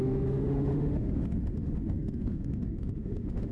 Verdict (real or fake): fake